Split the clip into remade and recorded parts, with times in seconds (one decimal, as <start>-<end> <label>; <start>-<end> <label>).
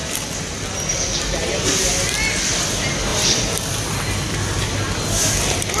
0.0-5.8 recorded